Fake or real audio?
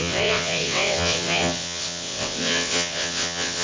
fake